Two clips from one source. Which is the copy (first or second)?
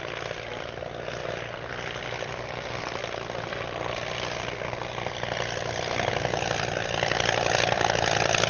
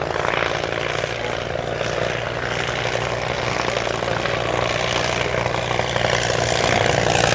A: first